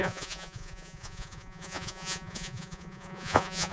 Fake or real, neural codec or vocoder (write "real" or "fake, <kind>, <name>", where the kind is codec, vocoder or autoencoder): fake, vocoder, Vocos